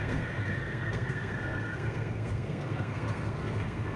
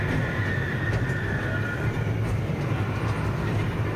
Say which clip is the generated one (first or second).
first